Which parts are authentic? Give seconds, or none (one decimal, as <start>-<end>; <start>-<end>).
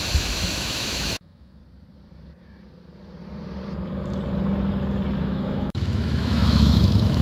1.6-5.2